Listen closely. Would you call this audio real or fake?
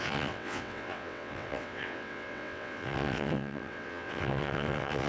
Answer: fake